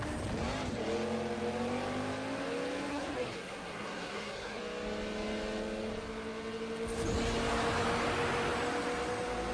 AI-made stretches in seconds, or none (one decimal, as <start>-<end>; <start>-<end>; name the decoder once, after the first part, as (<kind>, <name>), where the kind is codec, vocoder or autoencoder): 2.9-4.6 (codec, SNAC)